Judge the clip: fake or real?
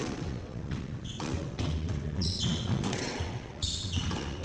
fake